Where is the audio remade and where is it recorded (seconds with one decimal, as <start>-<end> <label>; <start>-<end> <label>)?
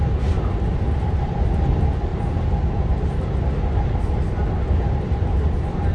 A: 0.0-5.9 recorded